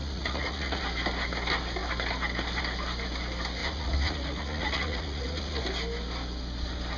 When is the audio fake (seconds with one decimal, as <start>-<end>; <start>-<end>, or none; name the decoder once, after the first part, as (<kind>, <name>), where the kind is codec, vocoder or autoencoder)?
0.0-0.8 (vocoder, Vocos); 3.6-5.6